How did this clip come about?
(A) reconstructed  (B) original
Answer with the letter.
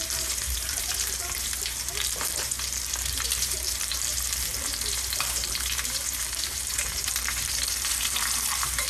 A